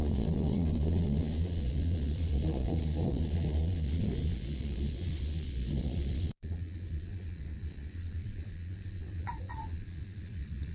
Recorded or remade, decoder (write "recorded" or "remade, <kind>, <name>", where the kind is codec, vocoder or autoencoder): remade, vocoder, Vocos